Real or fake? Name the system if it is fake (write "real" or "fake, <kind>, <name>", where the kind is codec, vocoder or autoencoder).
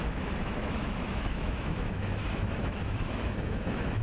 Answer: fake, autoencoder, DAC-VAE